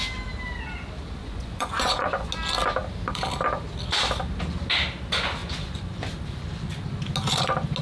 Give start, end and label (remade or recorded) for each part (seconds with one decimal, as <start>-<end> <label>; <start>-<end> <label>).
0.0-1.2 recorded; 1.2-2.3 remade; 2.3-5.4 recorded; 5.4-6.1 remade; 6.1-7.8 recorded